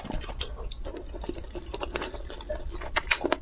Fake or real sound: real